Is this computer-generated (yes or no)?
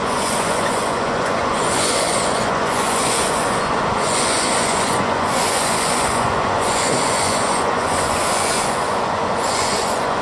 yes